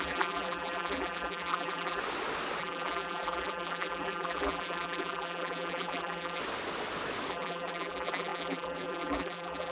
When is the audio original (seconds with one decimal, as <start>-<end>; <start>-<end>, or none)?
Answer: 2.0-2.6; 6.4-7.3